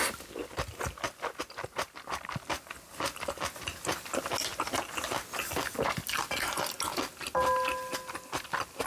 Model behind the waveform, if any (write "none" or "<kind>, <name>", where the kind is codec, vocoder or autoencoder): none